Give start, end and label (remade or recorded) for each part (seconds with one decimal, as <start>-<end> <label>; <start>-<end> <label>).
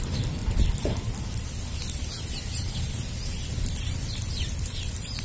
0.0-0.4 remade; 0.4-3.5 recorded; 3.5-5.2 remade